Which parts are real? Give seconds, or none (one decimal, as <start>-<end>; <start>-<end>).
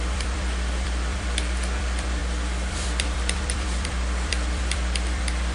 2.2-2.7